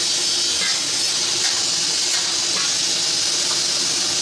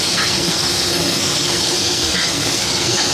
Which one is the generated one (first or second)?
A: second